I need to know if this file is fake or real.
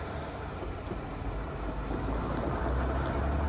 real